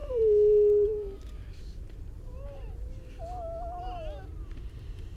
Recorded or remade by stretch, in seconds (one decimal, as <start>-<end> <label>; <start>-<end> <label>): 0.0-3.1 remade; 3.1-4.3 recorded; 4.3-5.2 remade

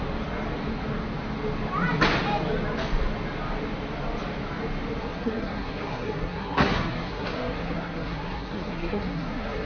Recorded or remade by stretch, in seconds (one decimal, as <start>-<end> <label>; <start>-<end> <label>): 0.0-5.0 recorded; 5.0-9.7 remade